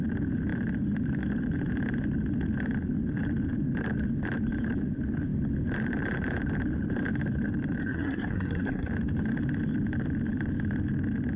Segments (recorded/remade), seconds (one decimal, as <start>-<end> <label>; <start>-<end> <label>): 0.0-7.8 recorded; 7.8-8.9 remade; 8.9-11.4 recorded